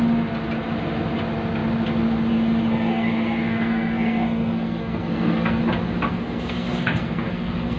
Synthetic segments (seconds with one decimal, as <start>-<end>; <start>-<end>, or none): 2.7-5.6; 6.1-7.8